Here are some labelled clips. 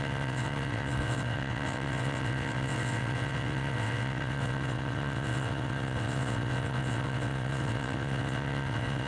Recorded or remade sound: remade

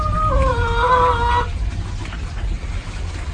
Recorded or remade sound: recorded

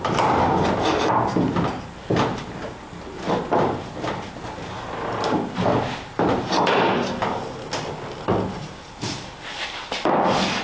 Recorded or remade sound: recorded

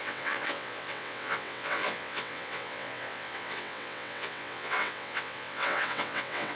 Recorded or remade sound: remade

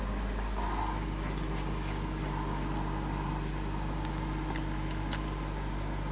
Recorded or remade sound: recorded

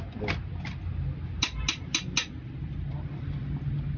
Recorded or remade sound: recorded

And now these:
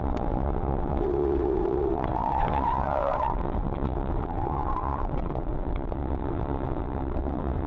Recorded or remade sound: remade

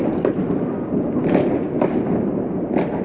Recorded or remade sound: recorded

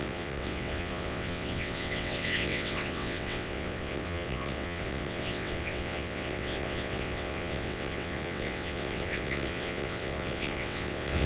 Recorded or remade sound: remade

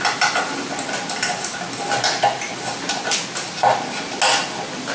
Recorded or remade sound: recorded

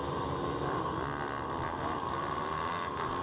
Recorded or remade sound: recorded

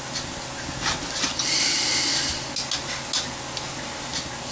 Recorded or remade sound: recorded